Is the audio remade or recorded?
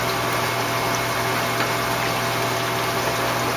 recorded